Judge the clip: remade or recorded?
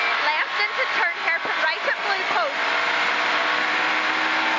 recorded